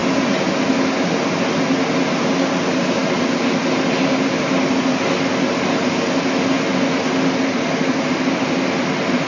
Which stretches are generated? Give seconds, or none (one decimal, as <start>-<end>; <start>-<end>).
none

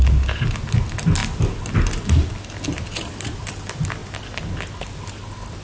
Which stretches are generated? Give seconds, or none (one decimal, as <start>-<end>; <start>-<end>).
none